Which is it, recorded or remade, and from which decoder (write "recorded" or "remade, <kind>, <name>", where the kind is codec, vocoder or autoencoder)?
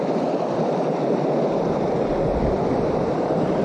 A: remade, vocoder, BigVGAN v2